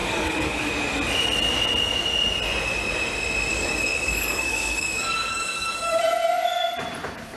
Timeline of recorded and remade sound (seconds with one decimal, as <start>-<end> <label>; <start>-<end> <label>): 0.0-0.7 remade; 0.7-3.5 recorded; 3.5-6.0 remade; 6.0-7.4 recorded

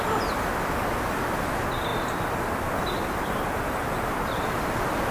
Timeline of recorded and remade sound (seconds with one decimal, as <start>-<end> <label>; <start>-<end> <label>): 0.0-5.1 recorded

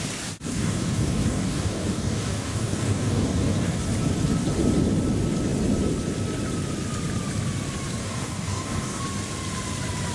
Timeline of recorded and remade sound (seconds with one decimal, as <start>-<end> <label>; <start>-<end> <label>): 0.0-0.5 recorded; 0.5-3.8 remade; 3.8-8.0 recorded; 8.0-9.0 remade; 9.0-10.1 recorded